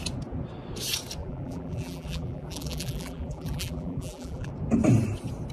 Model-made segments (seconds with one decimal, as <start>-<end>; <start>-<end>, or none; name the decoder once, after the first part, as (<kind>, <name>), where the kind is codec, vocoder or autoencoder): 1.2-4.5 (vocoder, BigVGAN v2)